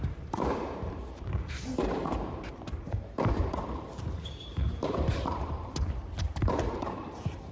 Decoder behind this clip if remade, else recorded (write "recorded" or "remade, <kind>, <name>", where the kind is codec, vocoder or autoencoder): remade, vocoder, BigVGAN v2